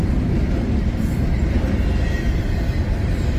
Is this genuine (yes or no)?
yes